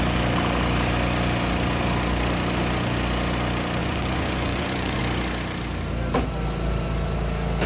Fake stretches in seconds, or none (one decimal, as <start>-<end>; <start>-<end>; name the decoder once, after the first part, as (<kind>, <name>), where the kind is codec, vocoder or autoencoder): 3.8-5.0 (vocoder, Vocos)